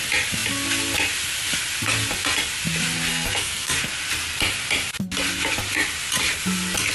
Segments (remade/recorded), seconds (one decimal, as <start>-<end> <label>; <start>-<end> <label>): 0.0-3.1 recorded; 3.1-3.7 remade; 3.7-6.9 recorded